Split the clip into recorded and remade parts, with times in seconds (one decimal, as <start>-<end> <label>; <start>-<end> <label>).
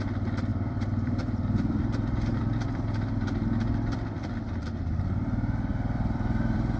0.0-0.5 recorded; 0.5-4.5 remade; 4.5-5.7 recorded; 5.7-6.8 remade